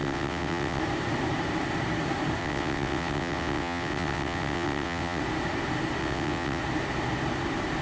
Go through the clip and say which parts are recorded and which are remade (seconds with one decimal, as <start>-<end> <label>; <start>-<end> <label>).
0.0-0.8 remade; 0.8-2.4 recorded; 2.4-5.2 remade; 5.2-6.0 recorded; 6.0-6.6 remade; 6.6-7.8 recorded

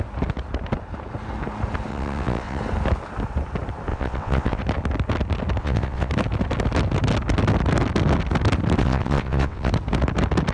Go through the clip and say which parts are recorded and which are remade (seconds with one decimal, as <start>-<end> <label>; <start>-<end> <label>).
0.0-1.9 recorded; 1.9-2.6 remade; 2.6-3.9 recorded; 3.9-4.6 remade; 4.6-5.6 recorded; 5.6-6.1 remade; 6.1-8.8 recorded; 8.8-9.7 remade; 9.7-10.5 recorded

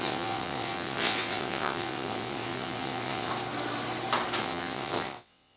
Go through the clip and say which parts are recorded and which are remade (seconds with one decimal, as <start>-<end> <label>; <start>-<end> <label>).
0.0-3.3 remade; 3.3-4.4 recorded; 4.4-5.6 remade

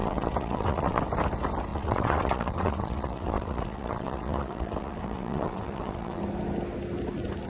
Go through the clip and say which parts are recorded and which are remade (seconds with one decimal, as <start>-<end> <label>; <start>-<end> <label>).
0.0-1.0 remade; 1.0-1.7 recorded; 1.7-6.2 remade; 6.2-7.5 recorded